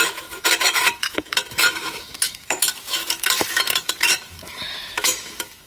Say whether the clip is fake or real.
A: fake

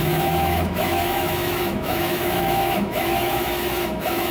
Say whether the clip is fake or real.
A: fake